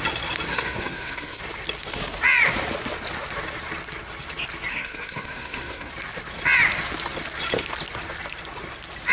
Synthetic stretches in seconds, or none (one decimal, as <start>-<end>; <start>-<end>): 0.5-1.4; 4.7-5.9